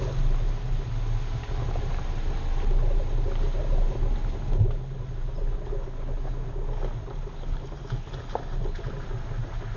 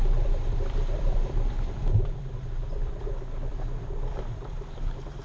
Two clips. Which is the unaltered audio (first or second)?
first